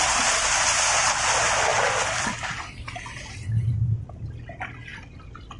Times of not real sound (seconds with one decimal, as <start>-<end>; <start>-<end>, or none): none